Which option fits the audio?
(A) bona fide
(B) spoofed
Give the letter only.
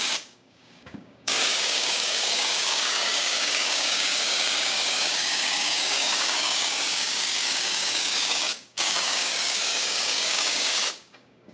B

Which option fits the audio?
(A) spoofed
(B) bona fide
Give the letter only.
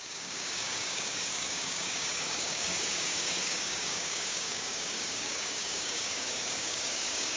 A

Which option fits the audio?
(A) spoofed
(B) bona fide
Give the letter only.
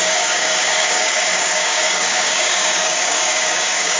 A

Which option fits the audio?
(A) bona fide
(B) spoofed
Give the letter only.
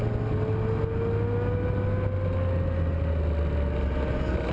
A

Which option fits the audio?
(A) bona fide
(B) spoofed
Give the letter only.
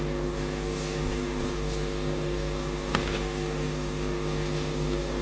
B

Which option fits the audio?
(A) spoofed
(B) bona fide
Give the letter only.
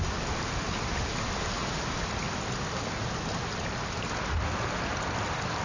B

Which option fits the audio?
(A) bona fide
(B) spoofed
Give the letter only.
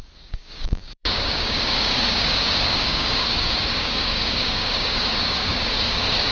B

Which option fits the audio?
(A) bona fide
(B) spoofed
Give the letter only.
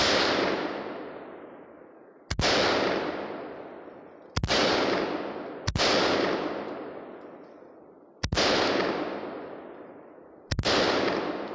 A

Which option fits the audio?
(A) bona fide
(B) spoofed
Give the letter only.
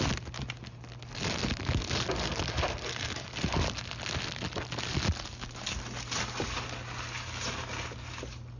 A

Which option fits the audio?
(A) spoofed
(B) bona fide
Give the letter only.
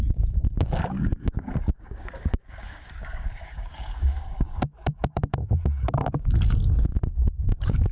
A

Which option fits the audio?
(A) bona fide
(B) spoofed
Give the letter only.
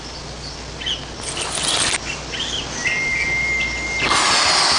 A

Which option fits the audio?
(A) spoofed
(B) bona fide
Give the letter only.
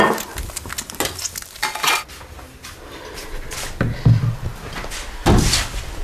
B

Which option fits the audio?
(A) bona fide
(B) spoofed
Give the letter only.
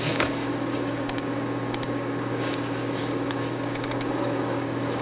B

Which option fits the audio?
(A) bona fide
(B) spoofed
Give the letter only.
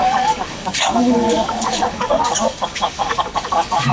B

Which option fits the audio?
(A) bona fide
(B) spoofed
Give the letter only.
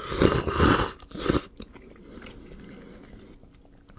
A